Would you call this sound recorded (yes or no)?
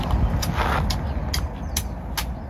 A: yes